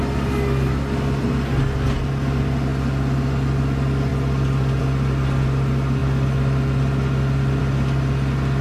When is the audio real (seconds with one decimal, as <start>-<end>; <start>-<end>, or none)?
0.0-4.1; 4.8-8.6